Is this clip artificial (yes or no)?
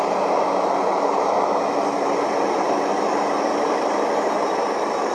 no